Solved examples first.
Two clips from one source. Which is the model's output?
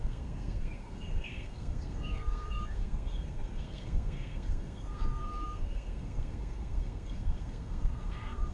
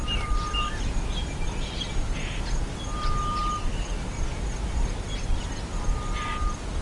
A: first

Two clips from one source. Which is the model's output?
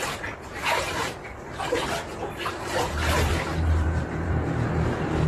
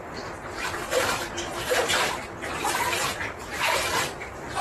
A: first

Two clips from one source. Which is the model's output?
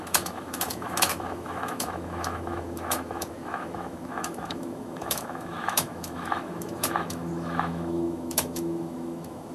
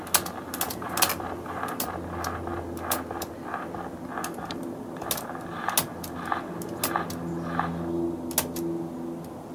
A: first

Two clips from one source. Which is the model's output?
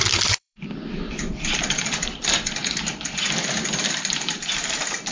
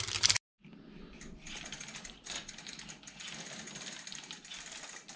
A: first